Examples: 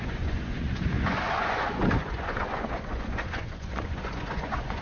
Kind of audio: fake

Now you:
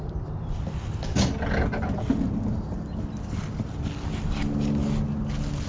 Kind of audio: real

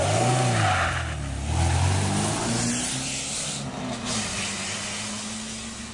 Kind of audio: real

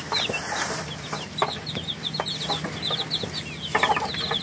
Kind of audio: real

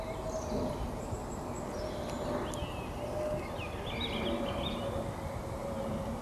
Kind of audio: real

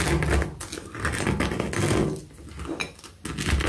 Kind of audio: real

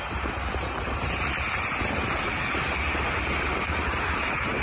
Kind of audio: fake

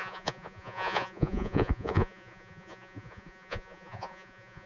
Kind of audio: fake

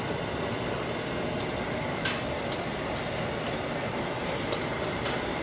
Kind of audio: real